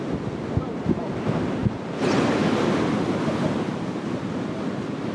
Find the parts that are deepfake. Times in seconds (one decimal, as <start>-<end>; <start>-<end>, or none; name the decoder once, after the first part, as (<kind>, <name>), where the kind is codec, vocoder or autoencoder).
none

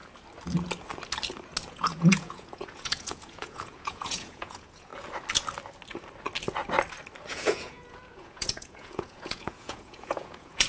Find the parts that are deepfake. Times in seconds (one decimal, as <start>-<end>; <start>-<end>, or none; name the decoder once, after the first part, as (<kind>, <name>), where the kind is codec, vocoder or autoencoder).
1.7-4.9 (vocoder, Vocos); 7.3-10.7

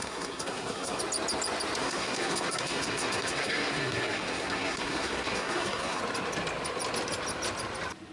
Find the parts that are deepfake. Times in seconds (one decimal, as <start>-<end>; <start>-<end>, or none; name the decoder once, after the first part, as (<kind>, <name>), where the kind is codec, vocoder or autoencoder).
0.0-1.0 (codec, SNAC); 1.8-6.0

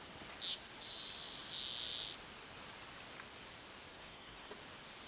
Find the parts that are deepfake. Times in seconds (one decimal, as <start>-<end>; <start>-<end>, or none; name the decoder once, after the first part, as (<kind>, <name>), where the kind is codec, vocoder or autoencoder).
3.9-4.5 (codec, SNAC)

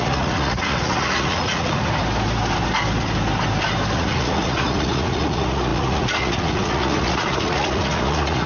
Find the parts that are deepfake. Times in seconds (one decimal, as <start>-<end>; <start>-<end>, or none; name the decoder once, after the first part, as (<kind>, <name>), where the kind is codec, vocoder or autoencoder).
0.0-1.8 (vocoder, Vocos); 3.9-8.5

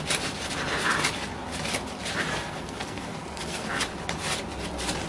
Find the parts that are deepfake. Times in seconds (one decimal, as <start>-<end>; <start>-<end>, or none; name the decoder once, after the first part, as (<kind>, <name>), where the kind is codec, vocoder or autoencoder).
2.3-3.8 (codec, SNAC)

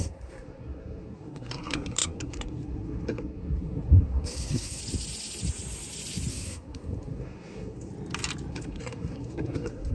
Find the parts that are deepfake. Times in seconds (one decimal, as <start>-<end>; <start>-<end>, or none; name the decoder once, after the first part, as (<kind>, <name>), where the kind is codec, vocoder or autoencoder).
0.0-4.8 (codec, SNAC); 6.3-7.9; 8.5-9.9

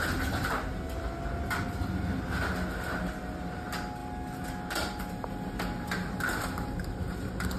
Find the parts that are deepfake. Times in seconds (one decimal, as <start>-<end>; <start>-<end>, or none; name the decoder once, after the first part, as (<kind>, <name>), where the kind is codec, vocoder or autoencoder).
none